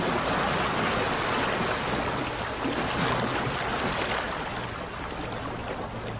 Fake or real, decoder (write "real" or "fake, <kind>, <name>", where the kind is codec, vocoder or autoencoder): real